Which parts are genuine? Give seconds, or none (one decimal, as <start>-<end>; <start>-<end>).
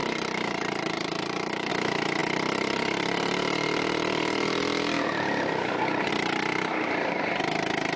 1.7-8.0